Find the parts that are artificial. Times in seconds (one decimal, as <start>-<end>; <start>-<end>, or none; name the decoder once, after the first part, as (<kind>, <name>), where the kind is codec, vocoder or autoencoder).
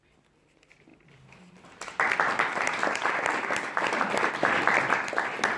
none